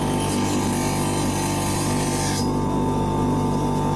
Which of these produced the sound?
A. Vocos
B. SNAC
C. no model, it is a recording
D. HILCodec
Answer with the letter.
C